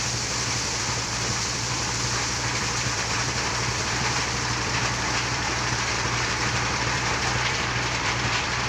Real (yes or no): no